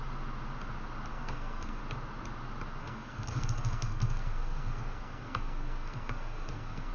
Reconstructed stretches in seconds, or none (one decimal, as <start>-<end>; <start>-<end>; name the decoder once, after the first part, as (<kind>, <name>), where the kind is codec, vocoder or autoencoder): 1.1-1.8 (codec, SNAC); 2.8-6.9